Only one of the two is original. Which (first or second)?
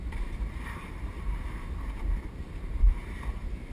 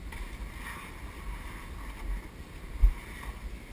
second